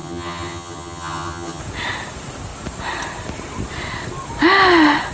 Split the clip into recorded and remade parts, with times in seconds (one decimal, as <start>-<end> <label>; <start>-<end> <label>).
0.0-1.6 remade; 1.6-5.1 recorded